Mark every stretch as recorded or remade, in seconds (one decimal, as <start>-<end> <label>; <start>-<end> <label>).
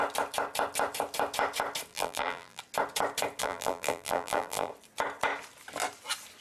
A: 0.0-1.9 recorded; 1.9-2.6 remade; 2.6-3.4 recorded; 3.4-4.7 remade; 4.7-6.4 recorded